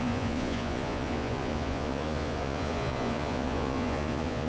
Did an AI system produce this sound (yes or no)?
yes